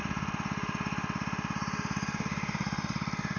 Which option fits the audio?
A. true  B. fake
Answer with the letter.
A